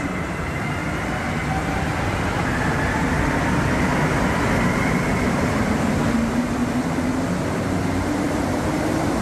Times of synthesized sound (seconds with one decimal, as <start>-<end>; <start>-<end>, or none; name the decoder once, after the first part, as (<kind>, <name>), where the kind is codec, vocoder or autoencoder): 0.0-0.8 (vocoder, BigVGAN v2); 4.7-6.6; 7.5-9.2